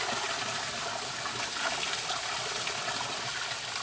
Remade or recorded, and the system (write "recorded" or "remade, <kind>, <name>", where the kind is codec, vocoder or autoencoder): recorded